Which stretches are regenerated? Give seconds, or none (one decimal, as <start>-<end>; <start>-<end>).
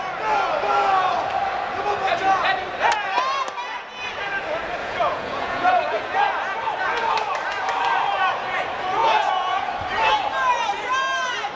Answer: 4.8-6.2; 9.0-9.7